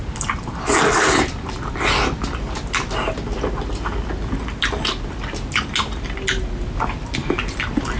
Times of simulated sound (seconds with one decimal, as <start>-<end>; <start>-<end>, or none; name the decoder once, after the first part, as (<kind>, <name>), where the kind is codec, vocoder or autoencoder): none